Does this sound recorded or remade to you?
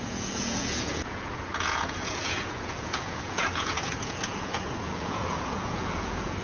remade